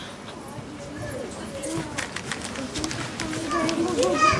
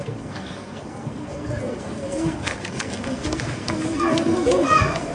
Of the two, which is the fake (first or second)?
second